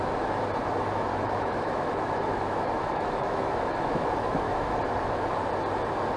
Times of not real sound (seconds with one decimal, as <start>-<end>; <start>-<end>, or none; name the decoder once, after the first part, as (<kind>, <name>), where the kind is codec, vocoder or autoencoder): 1.1-4.8 (autoencoder, DAC-VAE)